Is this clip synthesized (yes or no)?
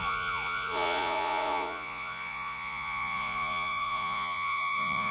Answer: yes